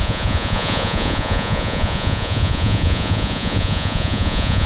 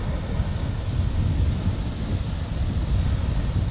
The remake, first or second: first